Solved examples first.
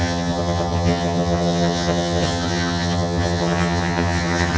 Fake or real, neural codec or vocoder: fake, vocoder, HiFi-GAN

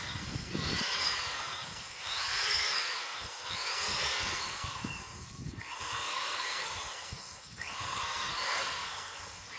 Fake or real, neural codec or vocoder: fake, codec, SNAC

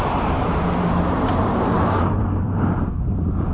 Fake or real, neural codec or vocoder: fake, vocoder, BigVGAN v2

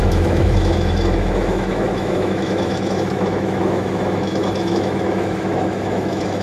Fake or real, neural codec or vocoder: fake, autoencoder, DAC-VAE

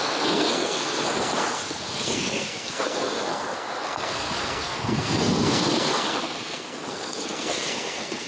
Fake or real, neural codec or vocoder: fake, codec, SNAC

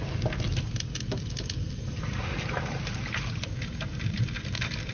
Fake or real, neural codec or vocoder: real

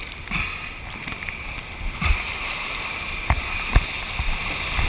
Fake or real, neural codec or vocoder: real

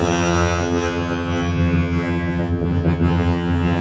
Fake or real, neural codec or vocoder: fake, vocoder, HiFi-GAN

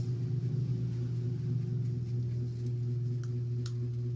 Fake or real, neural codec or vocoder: real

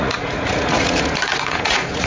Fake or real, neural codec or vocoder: fake, vocoder, Vocos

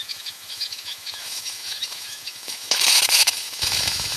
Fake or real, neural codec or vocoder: fake, autoencoder, DAC-VAE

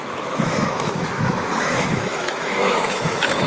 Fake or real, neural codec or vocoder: fake, autoencoder, DAC-VAE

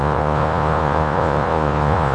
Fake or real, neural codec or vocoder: fake, vocoder, Vocos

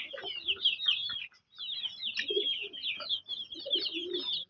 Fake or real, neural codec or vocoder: real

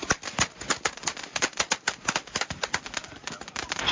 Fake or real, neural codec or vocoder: real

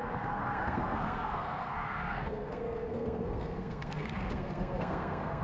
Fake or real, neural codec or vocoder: fake, codec, SNAC